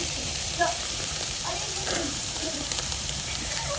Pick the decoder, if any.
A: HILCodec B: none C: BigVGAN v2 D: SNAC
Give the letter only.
C